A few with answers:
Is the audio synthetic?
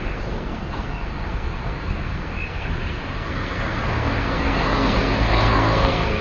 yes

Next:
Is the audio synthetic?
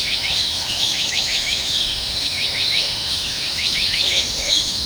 yes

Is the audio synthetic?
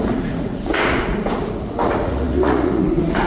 yes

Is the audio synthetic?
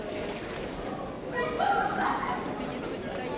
no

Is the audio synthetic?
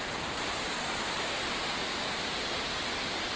no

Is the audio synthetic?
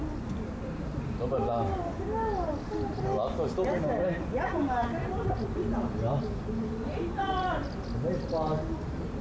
no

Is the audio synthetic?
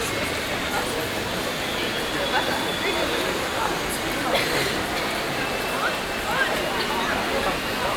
no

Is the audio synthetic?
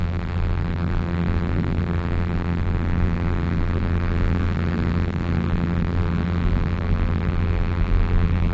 yes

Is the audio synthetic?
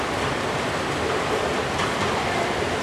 no